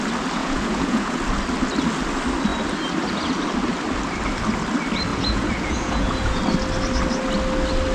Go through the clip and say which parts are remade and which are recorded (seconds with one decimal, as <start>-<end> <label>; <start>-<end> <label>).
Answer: 0.0-0.4 recorded; 0.4-1.2 remade; 1.2-5.1 recorded; 5.1-6.4 remade; 6.4-7.9 recorded